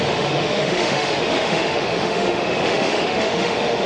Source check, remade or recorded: remade